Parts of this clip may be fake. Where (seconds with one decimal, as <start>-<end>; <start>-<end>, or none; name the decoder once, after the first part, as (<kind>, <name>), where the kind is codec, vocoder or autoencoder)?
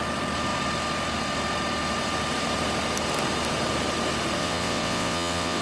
4.4-5.6 (vocoder, WaveNeXt)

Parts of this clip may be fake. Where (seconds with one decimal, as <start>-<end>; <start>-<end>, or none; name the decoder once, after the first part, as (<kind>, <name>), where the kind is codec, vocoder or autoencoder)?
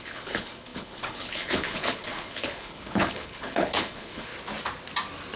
0.0-4.3 (codec, HILCodec)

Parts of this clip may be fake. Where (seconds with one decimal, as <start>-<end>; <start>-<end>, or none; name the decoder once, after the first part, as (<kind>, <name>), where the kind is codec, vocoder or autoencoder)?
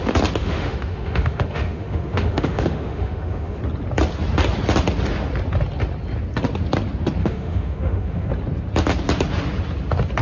0.4-3.6 (autoencoder, DAC-VAE); 7.2-8.3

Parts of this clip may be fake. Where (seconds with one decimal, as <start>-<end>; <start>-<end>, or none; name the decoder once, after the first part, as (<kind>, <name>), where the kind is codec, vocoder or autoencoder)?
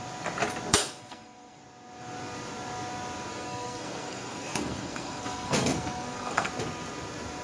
0.7-1.6 (codec, SNAC); 3.3-6.5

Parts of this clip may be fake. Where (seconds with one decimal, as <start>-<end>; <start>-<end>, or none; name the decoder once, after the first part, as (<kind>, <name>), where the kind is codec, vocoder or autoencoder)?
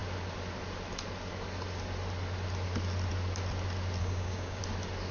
4.0-4.6 (codec, DAC)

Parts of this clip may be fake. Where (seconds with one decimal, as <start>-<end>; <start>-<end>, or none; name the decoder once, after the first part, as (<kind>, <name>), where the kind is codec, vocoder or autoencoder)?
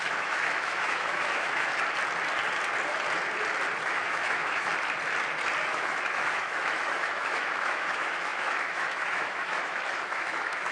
0.0-1.7 (autoencoder, DAC-VAE); 3.9-4.7; 5.6-10.7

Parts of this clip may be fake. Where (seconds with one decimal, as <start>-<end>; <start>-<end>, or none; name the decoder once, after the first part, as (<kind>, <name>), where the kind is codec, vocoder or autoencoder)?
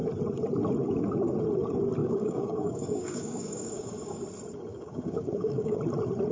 2.0-4.2 (codec, DAC); 4.7-5.8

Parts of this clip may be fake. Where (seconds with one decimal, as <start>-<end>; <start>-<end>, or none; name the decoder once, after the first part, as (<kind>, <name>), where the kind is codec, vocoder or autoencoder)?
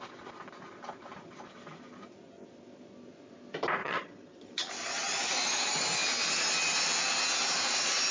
3.8-4.7 (vocoder, HiFi-GAN)